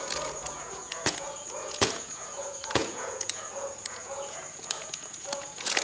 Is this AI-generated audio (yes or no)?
yes